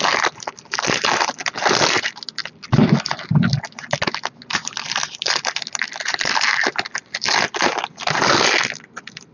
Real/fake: real